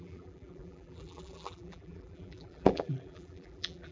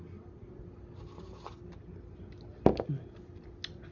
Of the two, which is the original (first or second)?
second